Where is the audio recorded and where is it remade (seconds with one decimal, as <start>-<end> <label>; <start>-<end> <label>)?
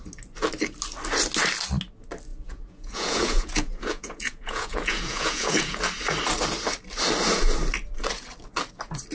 0.0-2.3 recorded; 2.3-5.8 remade; 5.8-9.1 recorded